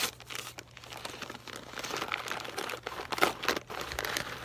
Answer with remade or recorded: recorded